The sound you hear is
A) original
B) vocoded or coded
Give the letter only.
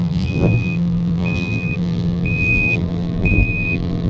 B